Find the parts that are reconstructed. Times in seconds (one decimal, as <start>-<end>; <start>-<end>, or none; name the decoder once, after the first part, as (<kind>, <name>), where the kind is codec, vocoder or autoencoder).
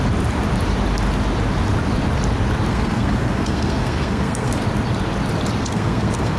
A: 2.7-4.6 (codec, SNAC); 5.6-6.4